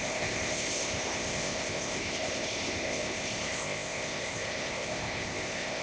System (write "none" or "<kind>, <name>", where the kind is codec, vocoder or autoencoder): codec, ZipCodec